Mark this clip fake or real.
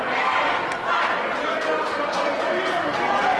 real